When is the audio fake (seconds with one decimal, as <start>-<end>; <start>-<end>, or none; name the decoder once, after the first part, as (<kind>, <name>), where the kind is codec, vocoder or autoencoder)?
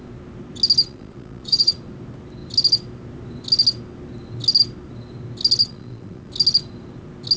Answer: 0.8-1.7 (vocoder, Vocos); 5.6-6.3